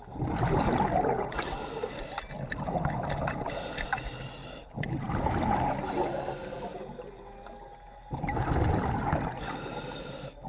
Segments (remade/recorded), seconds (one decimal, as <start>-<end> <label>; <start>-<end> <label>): 0.0-10.5 recorded

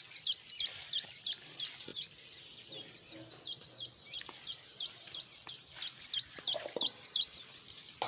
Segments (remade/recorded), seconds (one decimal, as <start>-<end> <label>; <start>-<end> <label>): 0.0-8.1 recorded

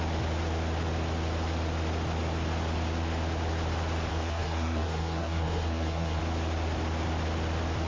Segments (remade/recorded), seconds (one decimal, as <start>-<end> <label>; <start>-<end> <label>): 0.0-4.1 recorded; 4.1-6.2 remade; 6.2-7.9 recorded

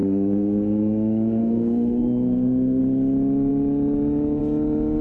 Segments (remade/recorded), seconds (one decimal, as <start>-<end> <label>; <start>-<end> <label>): 0.0-2.8 remade; 2.8-5.0 recorded

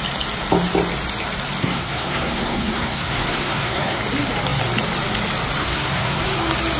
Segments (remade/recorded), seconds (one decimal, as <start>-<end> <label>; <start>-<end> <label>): 0.0-1.6 recorded; 1.6-4.0 remade; 4.0-5.6 recorded; 5.6-6.2 remade; 6.2-6.8 recorded